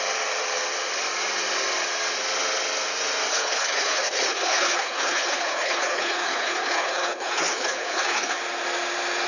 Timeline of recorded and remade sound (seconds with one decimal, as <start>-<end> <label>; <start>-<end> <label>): 0.0-3.3 recorded; 3.3-8.4 remade; 8.4-9.3 recorded